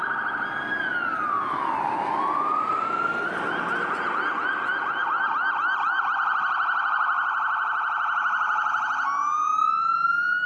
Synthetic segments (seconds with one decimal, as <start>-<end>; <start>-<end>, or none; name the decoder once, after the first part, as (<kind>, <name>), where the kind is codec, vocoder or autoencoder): none